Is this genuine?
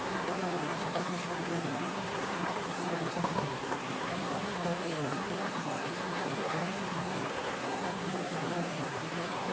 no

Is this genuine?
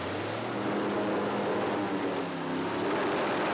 yes